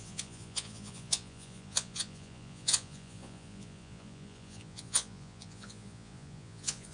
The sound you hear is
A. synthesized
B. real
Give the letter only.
A